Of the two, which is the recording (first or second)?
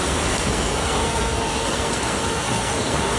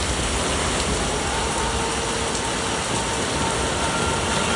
second